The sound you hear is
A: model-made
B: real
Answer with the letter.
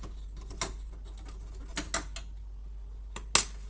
B